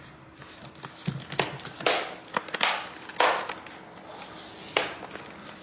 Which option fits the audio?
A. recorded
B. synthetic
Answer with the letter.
A